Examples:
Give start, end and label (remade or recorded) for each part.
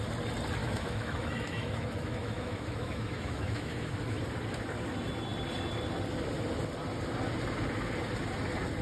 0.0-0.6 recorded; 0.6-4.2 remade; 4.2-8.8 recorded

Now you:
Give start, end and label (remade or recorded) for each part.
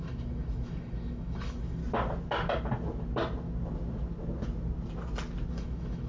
0.0-1.8 remade; 1.8-5.5 recorded; 5.5-6.1 remade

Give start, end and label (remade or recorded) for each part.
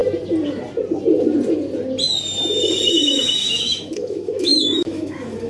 0.0-2.9 recorded; 2.9-5.5 remade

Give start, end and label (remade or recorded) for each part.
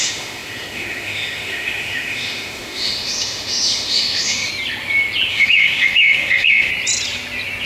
0.0-4.5 remade; 4.5-5.3 recorded; 5.3-6.7 remade; 6.7-7.7 recorded